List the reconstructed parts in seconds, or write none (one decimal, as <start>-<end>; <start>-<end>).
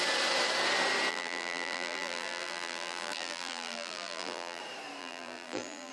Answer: 1.1-4.6; 5.0-5.9